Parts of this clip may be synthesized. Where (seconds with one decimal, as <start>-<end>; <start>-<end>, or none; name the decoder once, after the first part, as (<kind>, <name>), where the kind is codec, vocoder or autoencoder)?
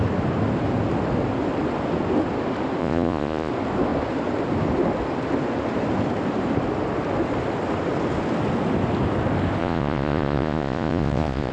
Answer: 2.8-3.5 (vocoder, Vocos); 9.6-11.5